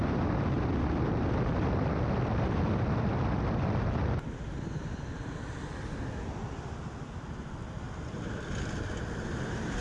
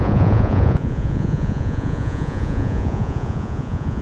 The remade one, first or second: second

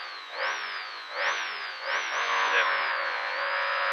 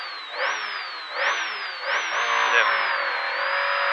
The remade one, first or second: first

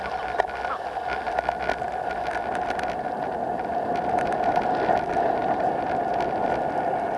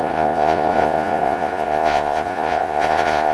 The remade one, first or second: second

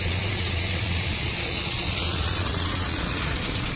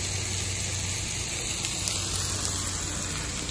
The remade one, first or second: first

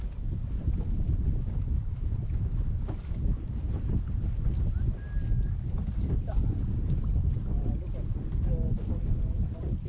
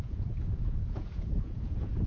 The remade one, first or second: second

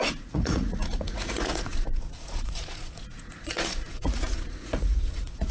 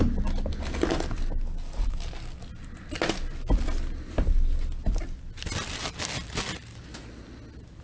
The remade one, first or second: first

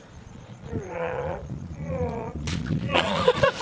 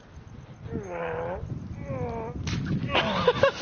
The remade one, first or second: first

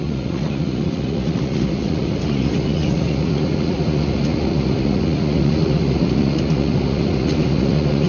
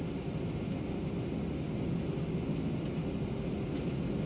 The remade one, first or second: first